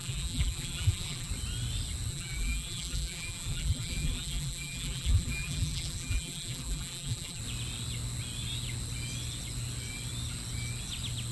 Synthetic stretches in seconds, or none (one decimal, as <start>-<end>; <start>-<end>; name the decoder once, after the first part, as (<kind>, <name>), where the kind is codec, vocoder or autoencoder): 0.0-1.3 (vocoder, BigVGAN v2); 2.1-7.4